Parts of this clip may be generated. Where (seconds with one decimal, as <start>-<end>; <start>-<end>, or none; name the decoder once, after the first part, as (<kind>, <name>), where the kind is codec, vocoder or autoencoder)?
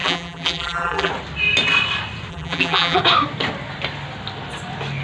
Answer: 0.0-1.1 (vocoder, BigVGAN v2); 2.3-3.0